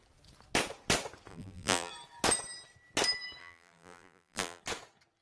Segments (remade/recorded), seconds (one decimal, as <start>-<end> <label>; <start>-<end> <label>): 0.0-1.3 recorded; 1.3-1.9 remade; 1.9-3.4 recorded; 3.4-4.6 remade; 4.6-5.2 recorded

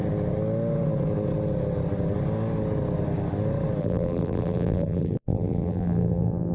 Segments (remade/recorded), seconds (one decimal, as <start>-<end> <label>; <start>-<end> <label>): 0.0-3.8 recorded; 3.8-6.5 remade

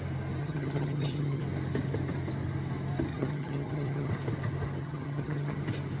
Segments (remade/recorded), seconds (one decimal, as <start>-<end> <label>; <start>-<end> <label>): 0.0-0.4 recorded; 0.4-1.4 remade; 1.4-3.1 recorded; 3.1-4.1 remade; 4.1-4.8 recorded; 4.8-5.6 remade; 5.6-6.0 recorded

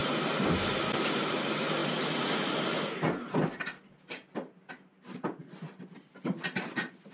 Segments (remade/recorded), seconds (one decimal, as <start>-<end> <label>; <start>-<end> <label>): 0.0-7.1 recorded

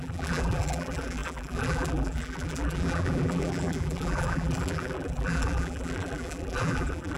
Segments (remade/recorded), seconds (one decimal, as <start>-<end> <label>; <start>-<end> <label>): 0.0-7.2 remade

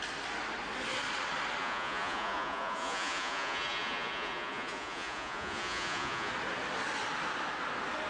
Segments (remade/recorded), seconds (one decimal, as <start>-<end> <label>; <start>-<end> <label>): 0.0-1.6 recorded; 1.6-6.3 remade; 6.3-8.1 recorded

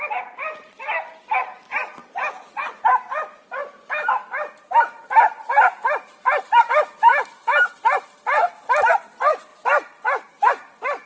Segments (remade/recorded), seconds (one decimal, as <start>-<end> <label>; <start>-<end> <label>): 0.0-11.1 recorded

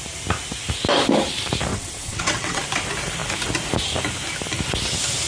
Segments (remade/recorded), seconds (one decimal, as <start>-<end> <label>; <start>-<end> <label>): 0.0-1.7 recorded; 1.7-2.6 remade; 2.6-5.3 recorded